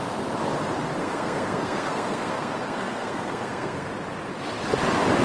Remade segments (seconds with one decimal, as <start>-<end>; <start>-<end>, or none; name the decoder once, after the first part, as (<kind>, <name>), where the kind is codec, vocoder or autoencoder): 1.0-3.9 (codec, SNAC)